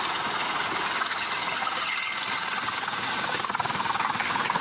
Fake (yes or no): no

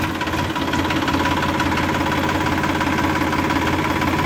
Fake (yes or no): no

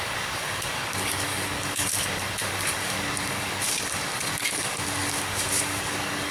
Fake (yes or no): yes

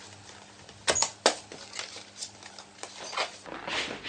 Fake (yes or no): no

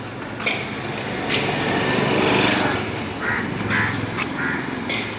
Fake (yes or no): no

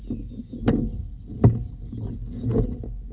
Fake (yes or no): no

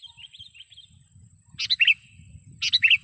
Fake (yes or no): no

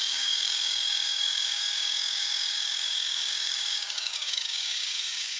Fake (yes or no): yes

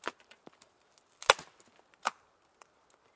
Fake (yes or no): no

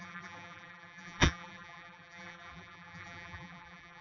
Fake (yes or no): yes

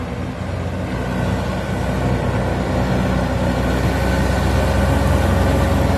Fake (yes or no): no